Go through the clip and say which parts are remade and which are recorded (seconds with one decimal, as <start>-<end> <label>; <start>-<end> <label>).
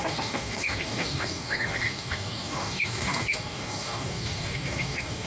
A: 0.0-5.3 remade